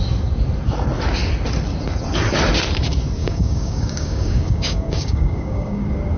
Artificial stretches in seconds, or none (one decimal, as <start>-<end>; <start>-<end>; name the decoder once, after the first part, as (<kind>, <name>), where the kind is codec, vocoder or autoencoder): 3.2-5.8 (codec, DAC)